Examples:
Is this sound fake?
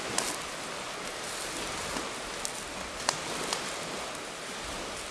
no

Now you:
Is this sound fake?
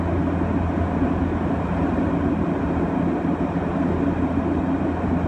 no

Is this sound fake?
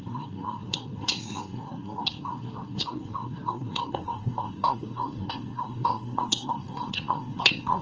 yes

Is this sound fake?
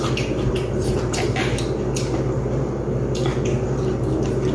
no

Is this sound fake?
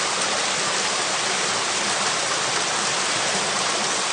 no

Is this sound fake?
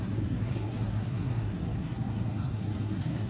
yes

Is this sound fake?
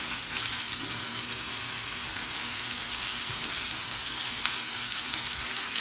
yes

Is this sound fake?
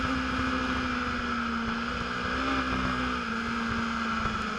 no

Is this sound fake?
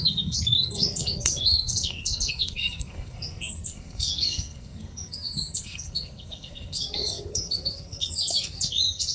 yes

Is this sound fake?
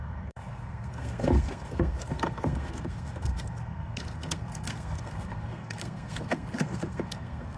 yes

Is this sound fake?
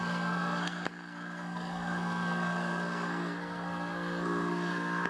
yes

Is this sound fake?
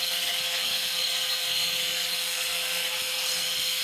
yes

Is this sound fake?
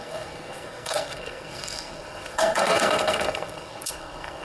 yes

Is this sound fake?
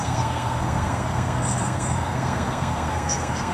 yes